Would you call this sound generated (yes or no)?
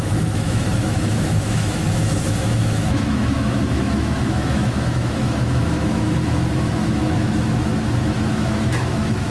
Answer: yes